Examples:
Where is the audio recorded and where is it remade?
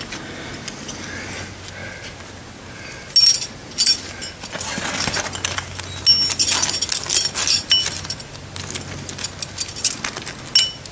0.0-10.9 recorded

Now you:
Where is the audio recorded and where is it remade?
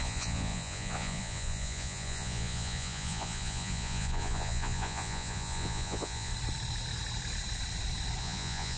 0.0-6.3 remade; 6.3-8.2 recorded; 8.2-8.8 remade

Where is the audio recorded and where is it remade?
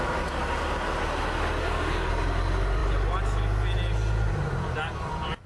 0.0-1.6 recorded; 1.6-2.1 remade; 2.1-5.5 recorded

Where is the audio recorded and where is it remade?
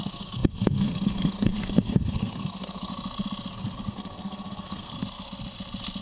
0.0-2.9 remade; 2.9-3.9 recorded; 3.9-4.9 remade; 4.9-6.0 recorded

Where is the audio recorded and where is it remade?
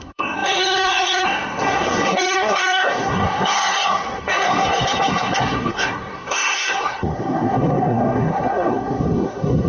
0.0-9.7 remade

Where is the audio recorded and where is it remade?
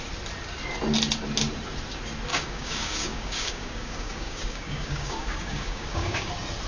0.0-2.3 recorded; 2.3-6.3 remade; 6.3-6.7 recorded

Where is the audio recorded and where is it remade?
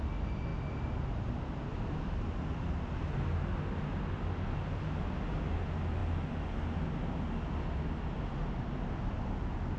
0.0-9.8 recorded